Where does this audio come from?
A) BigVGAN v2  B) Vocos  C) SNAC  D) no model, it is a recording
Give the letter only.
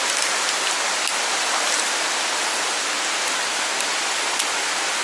D